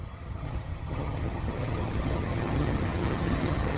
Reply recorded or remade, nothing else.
remade